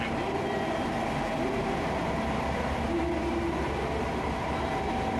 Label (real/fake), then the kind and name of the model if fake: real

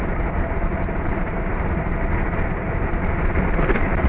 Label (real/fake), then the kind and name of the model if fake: real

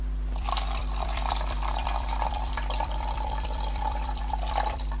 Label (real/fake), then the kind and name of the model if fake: fake, vocoder, BigVGAN v2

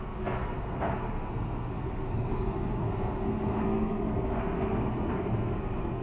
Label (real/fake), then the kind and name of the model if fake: fake, codec, SNAC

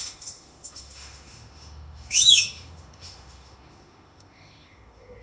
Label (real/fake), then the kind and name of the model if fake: fake, autoencoder, DAC-VAE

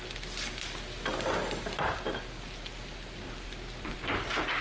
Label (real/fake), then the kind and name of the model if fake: real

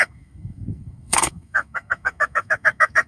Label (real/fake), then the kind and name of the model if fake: fake, codec, SNAC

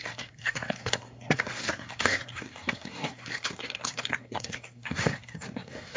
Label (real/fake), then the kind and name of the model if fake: fake, codec, SNAC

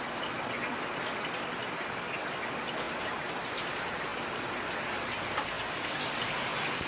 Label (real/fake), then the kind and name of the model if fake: real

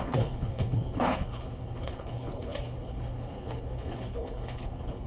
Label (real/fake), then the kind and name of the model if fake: fake, codec, HILCodec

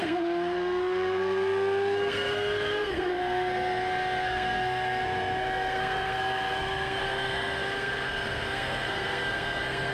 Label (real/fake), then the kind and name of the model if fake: fake, codec, SNAC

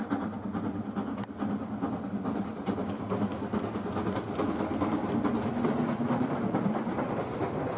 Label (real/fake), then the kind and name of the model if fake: real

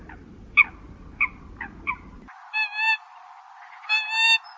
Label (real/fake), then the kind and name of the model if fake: real